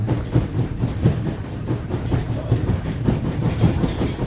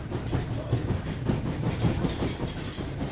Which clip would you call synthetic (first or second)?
first